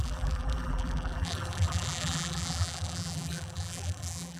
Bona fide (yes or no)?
no